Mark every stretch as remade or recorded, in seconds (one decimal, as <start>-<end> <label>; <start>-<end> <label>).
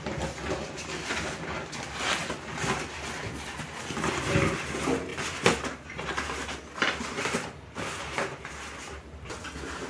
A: 0.0-9.9 recorded